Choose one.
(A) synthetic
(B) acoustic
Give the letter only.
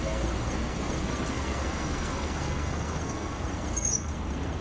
A